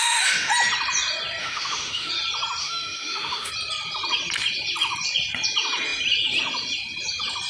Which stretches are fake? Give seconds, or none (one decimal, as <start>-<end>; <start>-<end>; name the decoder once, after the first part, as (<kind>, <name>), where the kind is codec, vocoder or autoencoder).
0.0-0.5 (autoencoder, DAC-VAE); 1.4-2.1; 2.6-3.5